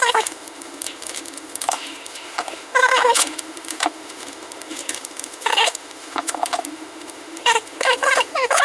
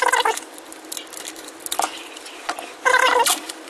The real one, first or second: second